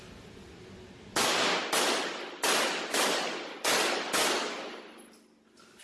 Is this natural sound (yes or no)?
yes